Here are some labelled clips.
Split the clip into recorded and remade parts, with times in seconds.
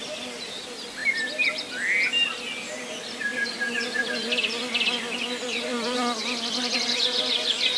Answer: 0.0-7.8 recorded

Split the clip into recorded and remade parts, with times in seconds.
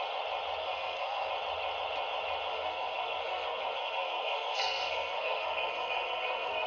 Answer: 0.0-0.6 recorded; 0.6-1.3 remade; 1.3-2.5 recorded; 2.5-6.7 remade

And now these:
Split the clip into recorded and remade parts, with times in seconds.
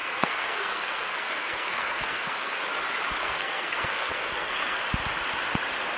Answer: 0.0-2.6 remade; 2.6-3.2 recorded; 3.2-4.8 remade; 4.8-6.0 recorded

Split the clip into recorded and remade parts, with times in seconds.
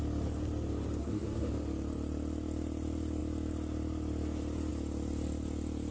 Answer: 0.0-1.0 recorded; 1.0-1.5 remade; 1.5-5.9 recorded